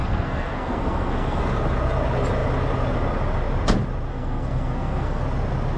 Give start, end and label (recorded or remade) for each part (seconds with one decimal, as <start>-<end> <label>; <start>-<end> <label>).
0.0-1.4 remade; 1.4-4.1 recorded; 4.1-5.2 remade; 5.2-5.8 recorded